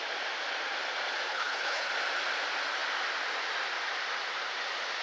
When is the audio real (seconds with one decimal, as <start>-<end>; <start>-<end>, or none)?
0.0-1.3; 1.9-5.0